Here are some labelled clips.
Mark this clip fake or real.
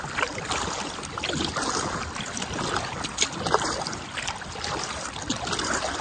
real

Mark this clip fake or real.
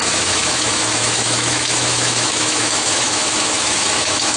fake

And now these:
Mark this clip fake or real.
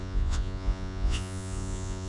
fake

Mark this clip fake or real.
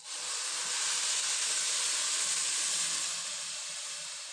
real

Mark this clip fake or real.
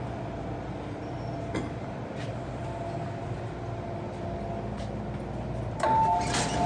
real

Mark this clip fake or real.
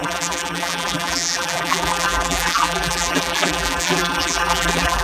fake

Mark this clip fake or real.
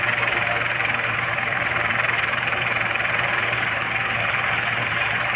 fake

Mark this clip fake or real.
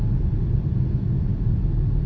real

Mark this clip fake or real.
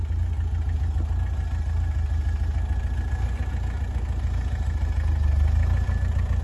real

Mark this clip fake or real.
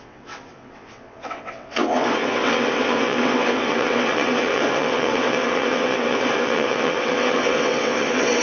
fake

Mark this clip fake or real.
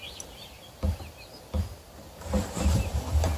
real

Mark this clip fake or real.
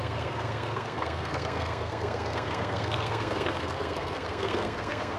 fake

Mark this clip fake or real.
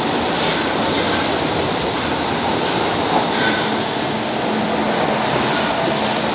real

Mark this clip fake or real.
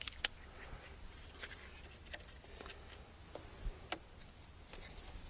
real